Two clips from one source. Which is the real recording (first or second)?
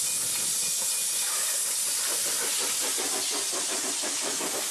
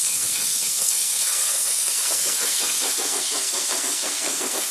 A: first